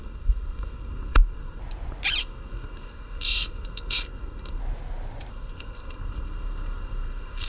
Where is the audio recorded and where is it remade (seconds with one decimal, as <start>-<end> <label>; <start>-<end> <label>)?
0.0-1.6 remade; 1.6-2.2 recorded; 2.2-4.6 remade; 4.6-5.3 recorded; 5.3-7.5 remade

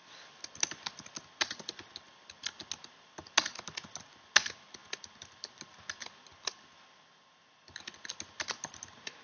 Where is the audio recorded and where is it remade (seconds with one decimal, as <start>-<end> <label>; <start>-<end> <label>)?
0.0-9.2 recorded

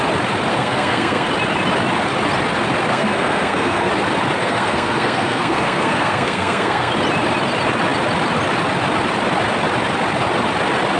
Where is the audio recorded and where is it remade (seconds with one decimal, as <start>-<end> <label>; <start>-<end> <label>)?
0.0-0.5 recorded; 0.5-1.3 remade; 1.3-2.9 recorded; 2.9-3.9 remade; 3.9-4.4 recorded; 4.4-6.9 remade; 6.9-11.0 recorded

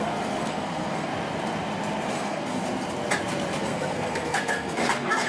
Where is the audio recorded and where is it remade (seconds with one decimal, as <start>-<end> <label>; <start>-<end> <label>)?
0.0-1.1 remade; 1.1-2.1 recorded; 2.1-2.6 remade; 2.6-3.6 recorded; 3.6-5.3 remade